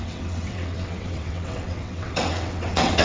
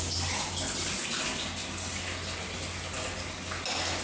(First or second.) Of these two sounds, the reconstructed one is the first